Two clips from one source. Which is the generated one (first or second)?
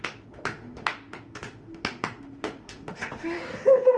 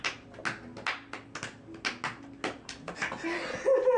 first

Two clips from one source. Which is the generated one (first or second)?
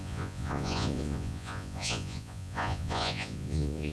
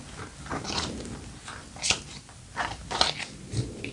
first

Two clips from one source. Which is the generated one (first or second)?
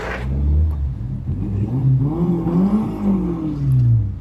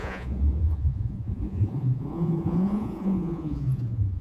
second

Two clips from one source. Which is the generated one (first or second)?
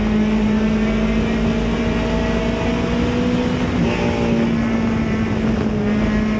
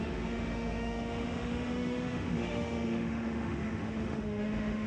second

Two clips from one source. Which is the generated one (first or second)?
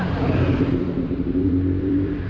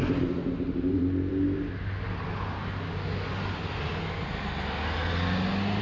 first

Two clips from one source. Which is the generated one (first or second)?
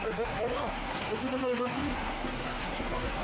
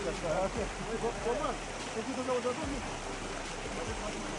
first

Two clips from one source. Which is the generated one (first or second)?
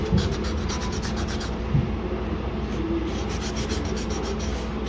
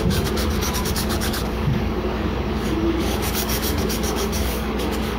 second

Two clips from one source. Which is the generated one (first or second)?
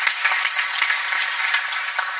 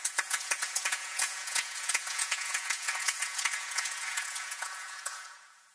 second